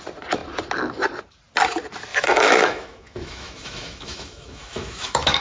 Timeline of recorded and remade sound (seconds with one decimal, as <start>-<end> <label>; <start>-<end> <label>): 0.0-2.1 recorded; 2.1-5.4 remade